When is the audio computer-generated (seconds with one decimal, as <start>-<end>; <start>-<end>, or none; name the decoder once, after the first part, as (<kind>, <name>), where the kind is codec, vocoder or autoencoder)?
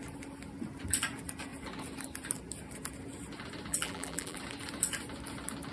3.7-4.4 (vocoder, BigVGAN v2)